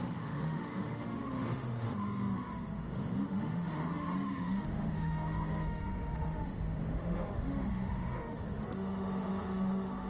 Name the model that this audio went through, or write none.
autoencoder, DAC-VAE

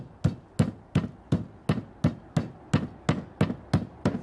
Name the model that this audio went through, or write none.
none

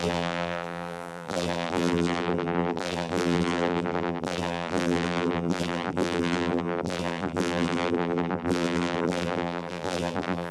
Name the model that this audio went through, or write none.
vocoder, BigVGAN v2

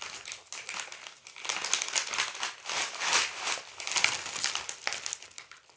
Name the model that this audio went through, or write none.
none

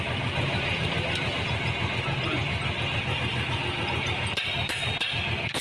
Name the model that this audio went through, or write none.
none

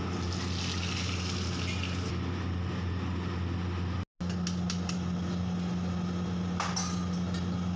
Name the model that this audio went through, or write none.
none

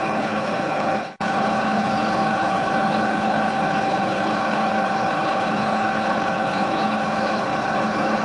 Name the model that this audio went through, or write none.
codec, HILCodec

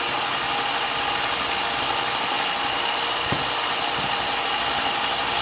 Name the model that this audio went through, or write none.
none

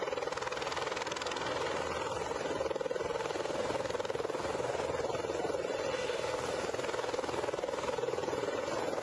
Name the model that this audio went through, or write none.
none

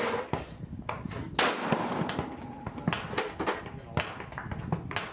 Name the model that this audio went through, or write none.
none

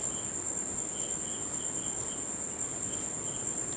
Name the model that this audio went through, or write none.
none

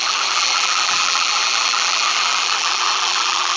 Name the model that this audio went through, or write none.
vocoder, BigVGAN v2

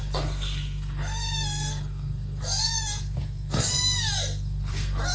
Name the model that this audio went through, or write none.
codec, SNAC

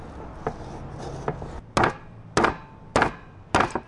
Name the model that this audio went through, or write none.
none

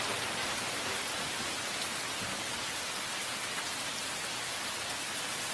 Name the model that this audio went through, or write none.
none